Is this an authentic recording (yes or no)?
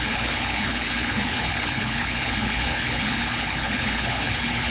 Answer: no